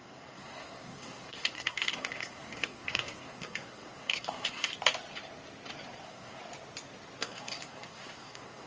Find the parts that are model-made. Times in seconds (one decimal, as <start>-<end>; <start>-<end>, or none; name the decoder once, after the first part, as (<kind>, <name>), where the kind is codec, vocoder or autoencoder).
0.0-4.7 (codec, SNAC); 6.0-6.4; 7.2-8.7